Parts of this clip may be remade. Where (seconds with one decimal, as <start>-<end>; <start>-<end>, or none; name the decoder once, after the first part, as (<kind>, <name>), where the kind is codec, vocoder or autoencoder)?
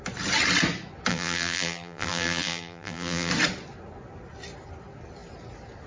1.1-3.3 (vocoder, BigVGAN v2)